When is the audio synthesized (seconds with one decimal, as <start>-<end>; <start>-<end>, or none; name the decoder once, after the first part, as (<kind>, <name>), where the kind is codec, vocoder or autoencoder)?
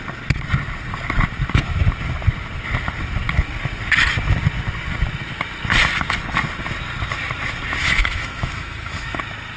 7.8-9.2 (autoencoder, DAC-VAE)